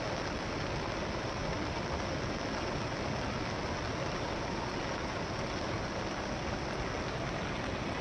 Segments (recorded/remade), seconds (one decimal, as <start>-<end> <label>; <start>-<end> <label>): 0.0-8.0 recorded